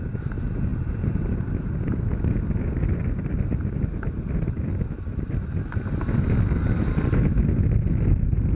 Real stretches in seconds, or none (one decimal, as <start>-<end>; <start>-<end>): 0.0-8.5